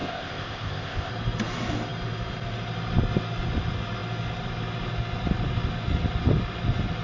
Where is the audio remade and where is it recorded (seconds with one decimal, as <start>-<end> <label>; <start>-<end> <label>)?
0.0-1.1 remade; 1.1-7.0 recorded

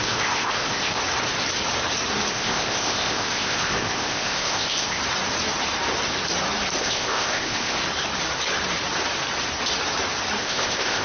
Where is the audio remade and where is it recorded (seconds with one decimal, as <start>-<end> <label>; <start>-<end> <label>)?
0.0-1.0 remade; 1.0-2.3 recorded; 2.3-5.0 remade; 5.0-6.8 recorded; 6.8-7.8 remade; 7.8-10.4 recorded; 10.4-11.0 remade

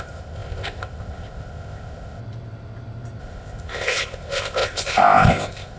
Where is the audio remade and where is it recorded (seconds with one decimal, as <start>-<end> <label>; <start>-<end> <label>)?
0.0-2.2 remade; 2.2-3.2 recorded; 3.2-5.8 remade